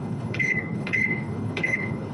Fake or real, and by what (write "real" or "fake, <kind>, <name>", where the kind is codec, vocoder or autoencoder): fake, codec, HILCodec